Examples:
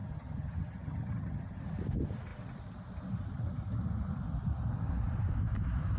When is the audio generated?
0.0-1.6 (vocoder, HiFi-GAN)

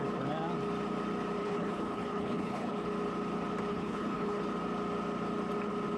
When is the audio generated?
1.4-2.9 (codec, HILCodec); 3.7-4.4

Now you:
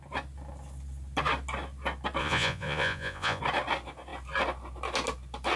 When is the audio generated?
2.2-3.4 (vocoder, Vocos)

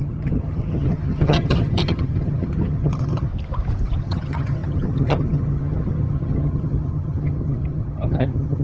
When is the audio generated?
0.0-3.3 (vocoder, HiFi-GAN); 4.0-8.6

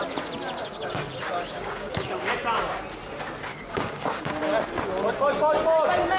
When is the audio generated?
0.6-2.3 (codec, DAC); 3.5-4.4